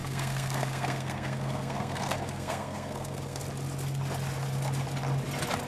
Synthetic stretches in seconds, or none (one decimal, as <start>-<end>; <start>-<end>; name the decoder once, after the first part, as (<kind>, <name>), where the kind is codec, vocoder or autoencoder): 0.0-3.4 (codec, SNAC)